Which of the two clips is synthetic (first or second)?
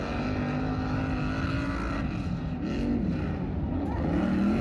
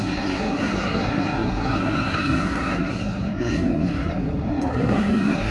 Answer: second